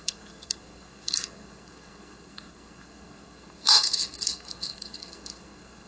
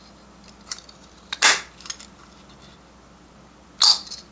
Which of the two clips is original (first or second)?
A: second